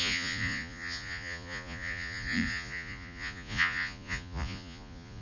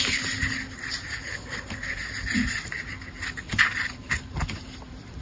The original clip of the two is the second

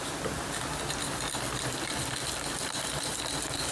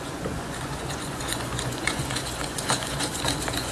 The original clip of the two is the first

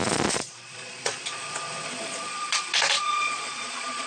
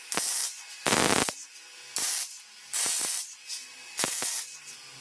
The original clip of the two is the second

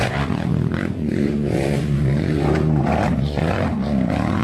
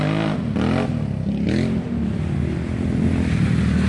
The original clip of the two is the second